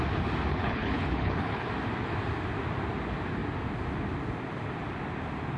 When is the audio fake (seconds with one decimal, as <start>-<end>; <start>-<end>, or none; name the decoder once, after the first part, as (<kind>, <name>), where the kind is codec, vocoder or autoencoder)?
0.5-1.7 (codec, HILCodec)